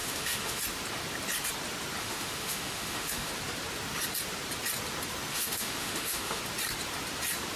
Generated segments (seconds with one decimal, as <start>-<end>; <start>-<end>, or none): 0.0-0.6; 2.0-3.3; 5.3-6.4